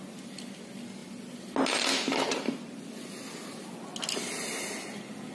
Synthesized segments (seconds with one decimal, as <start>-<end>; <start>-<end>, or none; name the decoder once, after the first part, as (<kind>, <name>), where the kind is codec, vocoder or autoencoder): none